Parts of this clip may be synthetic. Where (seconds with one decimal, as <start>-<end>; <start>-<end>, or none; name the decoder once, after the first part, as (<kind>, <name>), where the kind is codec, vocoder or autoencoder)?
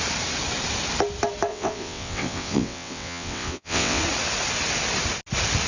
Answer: 1.5-4.0 (vocoder, WaveNeXt)